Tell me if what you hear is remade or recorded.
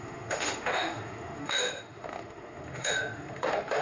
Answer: remade